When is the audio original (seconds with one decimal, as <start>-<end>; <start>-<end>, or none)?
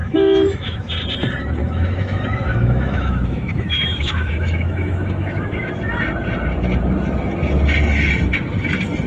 0.9-1.6; 5.7-9.1